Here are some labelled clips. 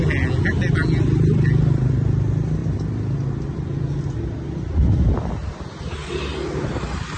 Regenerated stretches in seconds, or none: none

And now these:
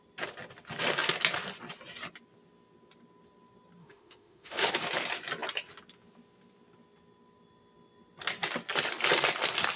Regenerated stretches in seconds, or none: 3.8-4.7 (autoencoder, DAC-VAE)

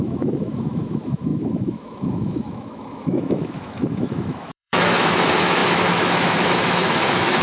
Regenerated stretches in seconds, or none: 0.0-7.4 (autoencoder, DAC-VAE)

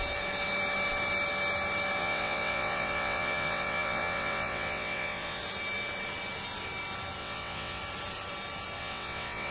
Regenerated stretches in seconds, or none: 2.0-5.4 (vocoder, WaveNeXt); 7.2-7.8; 8.8-9.5

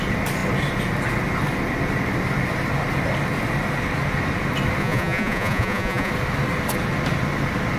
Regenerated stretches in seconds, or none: 4.8-6.1 (vocoder, Vocos)